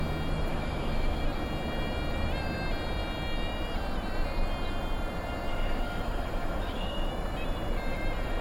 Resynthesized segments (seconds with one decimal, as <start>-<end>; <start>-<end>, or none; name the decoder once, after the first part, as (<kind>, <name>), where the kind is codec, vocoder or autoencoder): 0.5-1.2 (autoencoder, DAC-VAE); 5.5-7.1